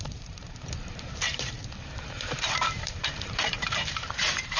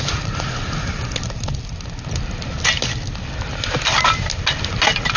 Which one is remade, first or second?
first